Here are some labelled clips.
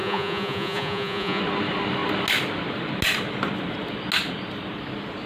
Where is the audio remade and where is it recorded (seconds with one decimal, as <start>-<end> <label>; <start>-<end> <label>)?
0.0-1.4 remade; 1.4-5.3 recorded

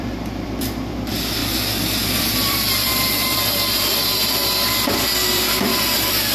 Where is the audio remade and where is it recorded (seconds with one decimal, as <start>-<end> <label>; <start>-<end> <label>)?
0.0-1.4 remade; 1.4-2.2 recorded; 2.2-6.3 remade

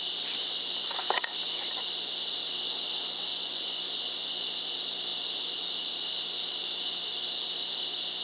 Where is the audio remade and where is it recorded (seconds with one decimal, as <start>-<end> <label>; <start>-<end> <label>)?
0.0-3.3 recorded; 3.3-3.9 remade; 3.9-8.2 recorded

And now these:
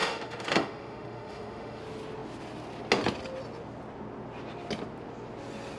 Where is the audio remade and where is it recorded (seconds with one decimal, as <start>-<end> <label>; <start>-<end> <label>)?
0.0-1.8 remade; 1.8-5.8 recorded

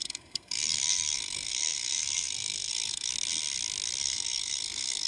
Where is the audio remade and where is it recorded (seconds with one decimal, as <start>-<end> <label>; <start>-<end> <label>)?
0.0-3.1 remade; 3.1-4.0 recorded; 4.0-5.1 remade